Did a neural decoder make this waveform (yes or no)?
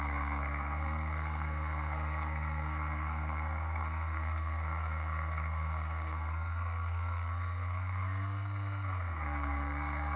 yes